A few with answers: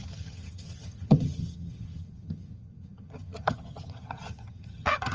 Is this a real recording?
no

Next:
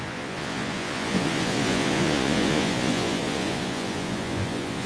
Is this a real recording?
no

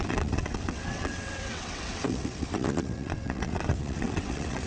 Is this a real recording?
no